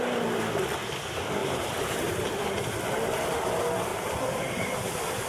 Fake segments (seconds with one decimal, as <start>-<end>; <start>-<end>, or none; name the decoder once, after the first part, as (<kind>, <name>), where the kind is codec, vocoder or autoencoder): 1.4-2.5 (vocoder, BigVGAN v2); 3.9-4.7